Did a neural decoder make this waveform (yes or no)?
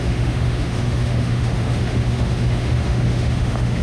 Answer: yes